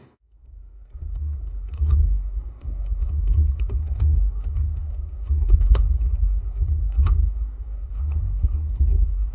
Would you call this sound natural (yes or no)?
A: no